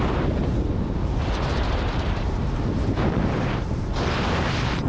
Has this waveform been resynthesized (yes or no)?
yes